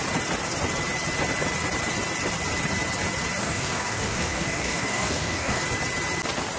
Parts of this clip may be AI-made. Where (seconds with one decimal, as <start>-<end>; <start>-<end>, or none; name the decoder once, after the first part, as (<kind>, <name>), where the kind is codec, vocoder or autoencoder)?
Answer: 3.4-5.6 (codec, DAC)

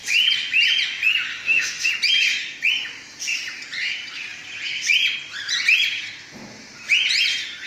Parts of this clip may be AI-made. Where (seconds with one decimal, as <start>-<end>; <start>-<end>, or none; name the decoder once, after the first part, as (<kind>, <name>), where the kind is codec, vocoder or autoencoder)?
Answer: 1.3-1.9 (autoencoder, DAC-VAE)

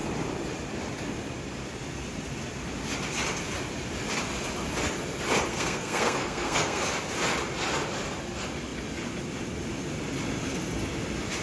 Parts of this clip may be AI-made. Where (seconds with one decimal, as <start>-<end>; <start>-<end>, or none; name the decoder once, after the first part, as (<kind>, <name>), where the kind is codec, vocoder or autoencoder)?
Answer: 5.5-6.8 (codec, SNAC)

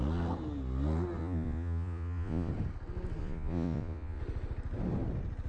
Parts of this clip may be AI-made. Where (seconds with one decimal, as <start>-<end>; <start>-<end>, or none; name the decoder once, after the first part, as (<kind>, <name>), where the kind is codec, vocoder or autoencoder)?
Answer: 1.2-2.5 (vocoder, Vocos); 3.2-4.2

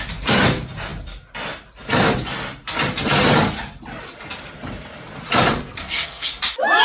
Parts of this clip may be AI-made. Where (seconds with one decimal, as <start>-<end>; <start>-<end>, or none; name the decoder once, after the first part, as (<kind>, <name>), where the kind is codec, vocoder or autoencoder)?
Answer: 5.6-6.3 (codec, SNAC)